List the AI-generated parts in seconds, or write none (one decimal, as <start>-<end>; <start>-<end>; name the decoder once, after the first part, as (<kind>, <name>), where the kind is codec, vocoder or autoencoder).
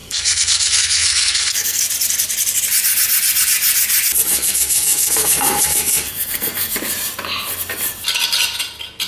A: 0.0-1.8 (codec, SNAC); 4.3-6.7